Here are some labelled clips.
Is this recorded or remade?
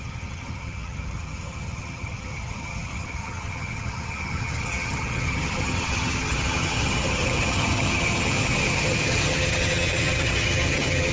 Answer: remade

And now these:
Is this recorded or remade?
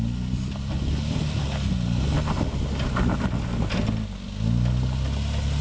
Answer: recorded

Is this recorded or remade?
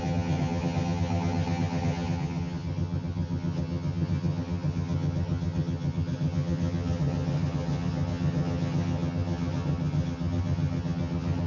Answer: remade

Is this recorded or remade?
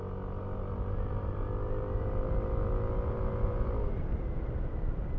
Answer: recorded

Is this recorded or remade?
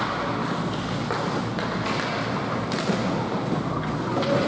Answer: recorded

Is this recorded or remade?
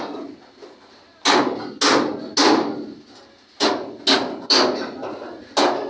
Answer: recorded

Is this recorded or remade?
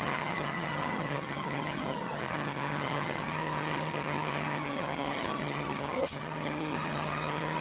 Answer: remade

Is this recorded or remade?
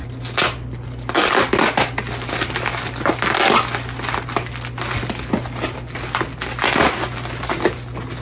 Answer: recorded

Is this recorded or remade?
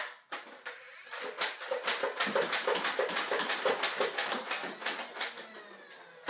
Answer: recorded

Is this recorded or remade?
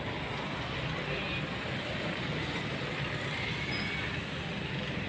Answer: recorded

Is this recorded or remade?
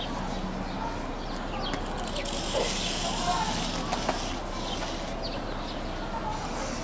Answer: recorded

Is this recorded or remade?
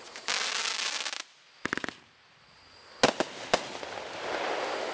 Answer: recorded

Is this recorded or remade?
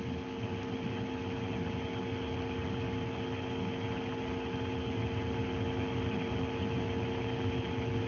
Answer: recorded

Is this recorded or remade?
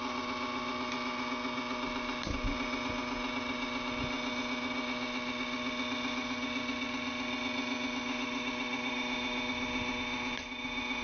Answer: recorded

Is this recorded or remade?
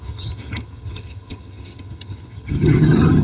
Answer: remade